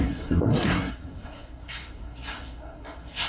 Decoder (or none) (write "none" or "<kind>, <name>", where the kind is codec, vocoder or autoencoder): codec, SNAC